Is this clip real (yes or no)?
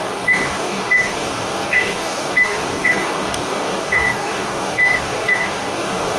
no